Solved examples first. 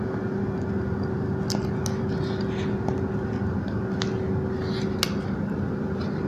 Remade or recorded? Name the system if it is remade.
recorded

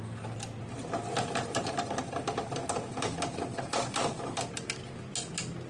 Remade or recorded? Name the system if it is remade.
recorded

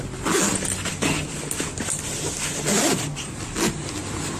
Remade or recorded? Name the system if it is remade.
recorded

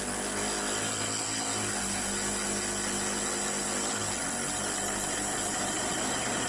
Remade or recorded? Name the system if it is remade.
recorded